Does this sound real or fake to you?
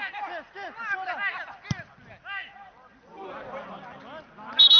real